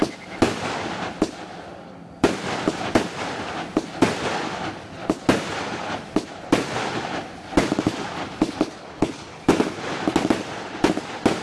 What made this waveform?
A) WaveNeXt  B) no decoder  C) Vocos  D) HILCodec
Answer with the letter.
B